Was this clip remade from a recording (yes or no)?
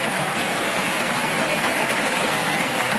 yes